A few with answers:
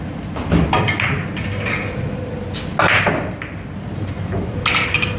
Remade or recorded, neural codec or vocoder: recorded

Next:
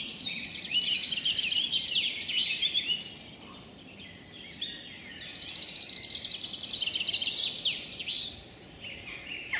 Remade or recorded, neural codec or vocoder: remade, vocoder, BigVGAN v2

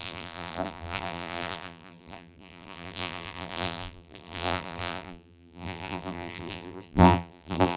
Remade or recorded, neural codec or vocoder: remade, vocoder, BigVGAN v2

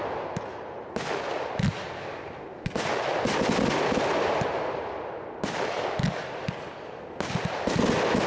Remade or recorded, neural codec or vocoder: recorded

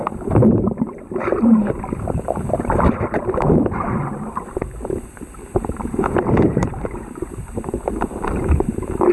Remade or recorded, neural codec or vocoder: remade, vocoder, BigVGAN v2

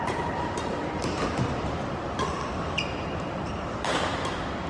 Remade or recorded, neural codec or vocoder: remade, vocoder, BigVGAN v2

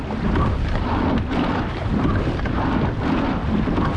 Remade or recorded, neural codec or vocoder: remade, vocoder, BigVGAN v2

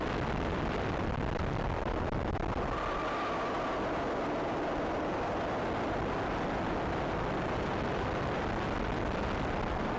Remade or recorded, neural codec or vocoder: recorded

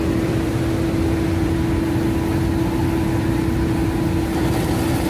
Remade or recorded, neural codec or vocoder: recorded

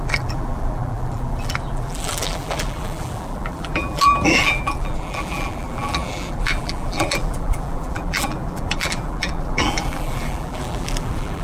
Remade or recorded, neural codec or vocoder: remade, vocoder, BigVGAN v2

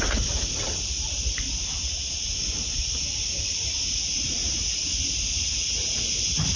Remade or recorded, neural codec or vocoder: remade, vocoder, BigVGAN v2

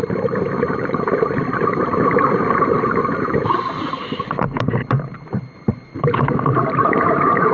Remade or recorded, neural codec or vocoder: remade, vocoder, BigVGAN v2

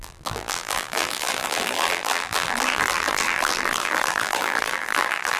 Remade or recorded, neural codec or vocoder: remade, vocoder, BigVGAN v2